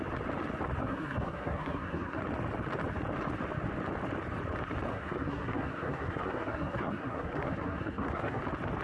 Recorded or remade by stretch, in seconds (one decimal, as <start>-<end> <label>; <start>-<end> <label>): 0.0-0.8 recorded; 0.8-2.2 remade; 2.2-4.9 recorded; 4.9-8.4 remade; 8.4-8.8 recorded